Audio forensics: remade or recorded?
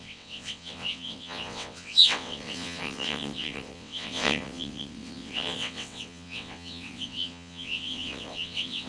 remade